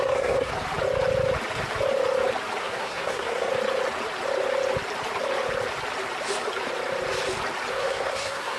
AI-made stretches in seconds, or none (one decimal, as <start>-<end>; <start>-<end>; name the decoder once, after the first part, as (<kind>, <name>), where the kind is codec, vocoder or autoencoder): 0.0-0.5 (codec, SNAC); 2.6-3.5; 7.7-8.6